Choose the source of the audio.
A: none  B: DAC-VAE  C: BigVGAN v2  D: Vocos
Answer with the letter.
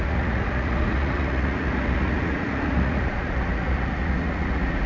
D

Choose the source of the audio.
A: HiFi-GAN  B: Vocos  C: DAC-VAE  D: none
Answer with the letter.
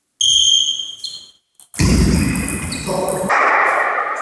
D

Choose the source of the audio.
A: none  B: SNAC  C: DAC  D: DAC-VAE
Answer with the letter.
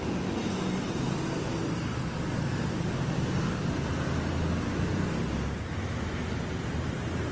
A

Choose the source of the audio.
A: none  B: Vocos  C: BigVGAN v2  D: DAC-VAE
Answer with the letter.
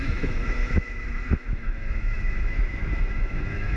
D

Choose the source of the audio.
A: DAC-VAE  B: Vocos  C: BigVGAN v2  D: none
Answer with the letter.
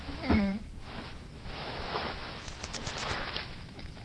A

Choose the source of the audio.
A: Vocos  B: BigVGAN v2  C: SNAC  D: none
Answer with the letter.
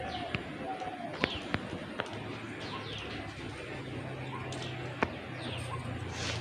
D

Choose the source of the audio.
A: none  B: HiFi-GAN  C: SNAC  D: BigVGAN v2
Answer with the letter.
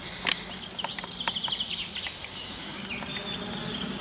A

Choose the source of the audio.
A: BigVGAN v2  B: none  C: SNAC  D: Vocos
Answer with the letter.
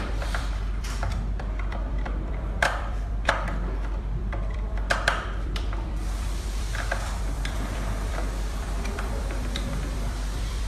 A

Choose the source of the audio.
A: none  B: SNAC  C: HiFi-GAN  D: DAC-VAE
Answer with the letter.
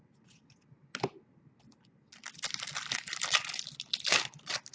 A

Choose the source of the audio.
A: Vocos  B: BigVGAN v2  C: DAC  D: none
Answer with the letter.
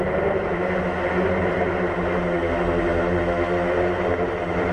D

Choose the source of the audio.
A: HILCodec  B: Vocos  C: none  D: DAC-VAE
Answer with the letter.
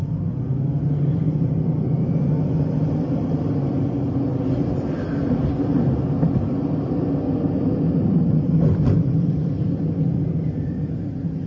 C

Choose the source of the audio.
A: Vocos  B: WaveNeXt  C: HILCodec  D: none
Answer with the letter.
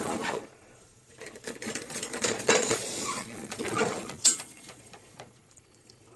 A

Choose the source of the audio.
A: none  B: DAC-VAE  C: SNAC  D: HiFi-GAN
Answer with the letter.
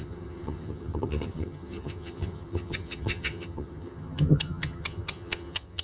D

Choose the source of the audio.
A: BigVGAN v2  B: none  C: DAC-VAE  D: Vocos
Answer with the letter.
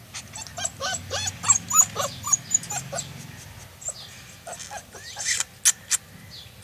B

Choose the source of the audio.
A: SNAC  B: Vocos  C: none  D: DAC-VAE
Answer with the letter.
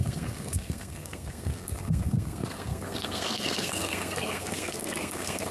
A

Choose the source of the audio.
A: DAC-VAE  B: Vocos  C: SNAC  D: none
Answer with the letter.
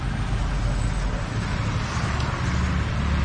D